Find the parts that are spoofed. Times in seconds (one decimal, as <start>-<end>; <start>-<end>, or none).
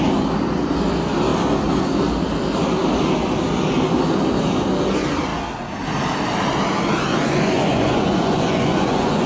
7.1-9.3